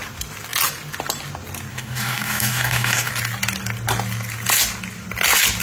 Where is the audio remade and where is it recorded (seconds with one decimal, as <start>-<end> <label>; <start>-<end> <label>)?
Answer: 0.0-1.7 recorded; 1.7-3.1 remade; 3.1-5.6 recorded

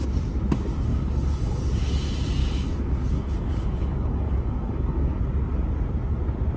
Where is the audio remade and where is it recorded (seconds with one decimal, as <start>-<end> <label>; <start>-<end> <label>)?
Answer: 0.0-0.9 recorded; 0.9-1.7 remade; 1.7-2.4 recorded; 2.4-5.2 remade; 5.2-6.6 recorded

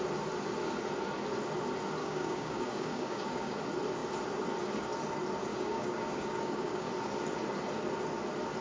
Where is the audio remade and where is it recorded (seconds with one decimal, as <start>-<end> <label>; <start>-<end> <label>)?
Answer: 0.0-2.0 recorded; 2.0-3.6 remade; 3.6-5.5 recorded; 5.5-6.9 remade; 6.9-8.6 recorded

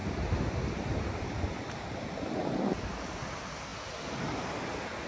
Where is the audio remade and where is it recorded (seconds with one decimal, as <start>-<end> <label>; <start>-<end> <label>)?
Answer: 0.0-5.1 recorded

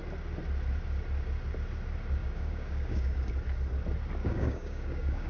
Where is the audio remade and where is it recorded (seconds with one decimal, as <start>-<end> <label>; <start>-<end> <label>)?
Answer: 0.0-2.2 recorded; 2.2-3.3 remade; 3.3-4.2 recorded; 4.2-5.3 remade